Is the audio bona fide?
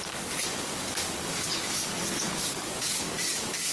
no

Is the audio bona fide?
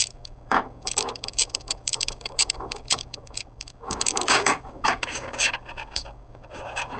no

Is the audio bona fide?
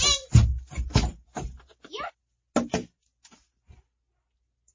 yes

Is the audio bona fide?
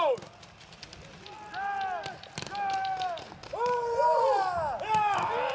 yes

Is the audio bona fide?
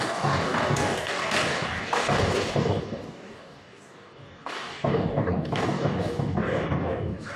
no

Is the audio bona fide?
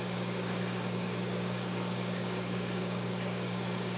no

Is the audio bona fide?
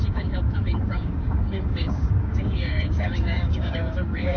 no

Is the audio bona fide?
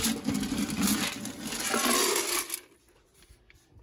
yes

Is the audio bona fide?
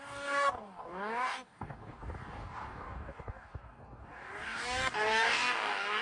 no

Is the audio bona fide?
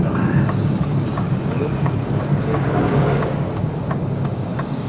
no